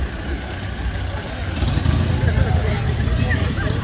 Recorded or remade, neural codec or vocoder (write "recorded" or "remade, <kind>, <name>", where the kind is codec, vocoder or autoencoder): recorded